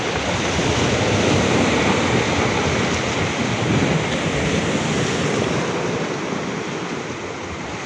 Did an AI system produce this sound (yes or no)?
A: no